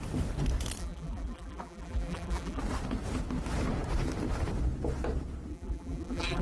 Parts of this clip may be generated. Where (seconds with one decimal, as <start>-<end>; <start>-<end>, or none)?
0.8-2.6; 5.5-6.4